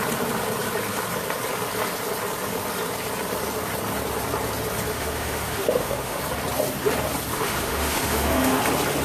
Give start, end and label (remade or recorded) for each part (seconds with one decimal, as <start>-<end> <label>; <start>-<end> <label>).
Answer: 0.0-4.9 recorded; 4.9-6.2 remade; 6.2-7.3 recorded; 7.3-8.6 remade; 8.6-9.0 recorded